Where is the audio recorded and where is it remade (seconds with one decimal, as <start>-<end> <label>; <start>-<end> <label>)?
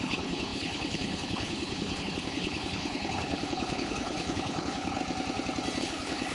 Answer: 0.0-5.0 remade; 5.0-5.8 recorded; 5.8-6.3 remade